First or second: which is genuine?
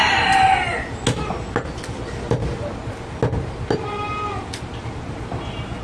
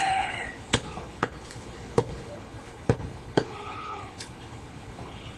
first